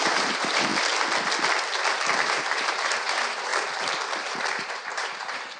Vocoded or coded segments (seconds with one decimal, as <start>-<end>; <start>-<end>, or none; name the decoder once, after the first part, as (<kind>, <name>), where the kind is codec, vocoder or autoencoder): 0.0-0.7 (vocoder, BigVGAN v2); 2.3-3.5; 4.2-5.6